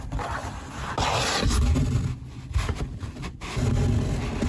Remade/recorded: recorded